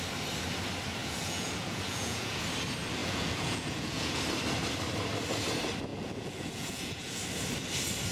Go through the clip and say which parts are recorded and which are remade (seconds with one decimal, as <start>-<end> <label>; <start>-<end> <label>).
0.0-1.0 recorded; 1.0-2.4 remade; 2.4-3.0 recorded; 3.0-4.2 remade; 4.2-5.9 recorded; 5.9-7.2 remade; 7.2-8.1 recorded